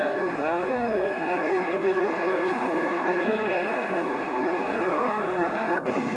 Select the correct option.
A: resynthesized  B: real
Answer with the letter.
A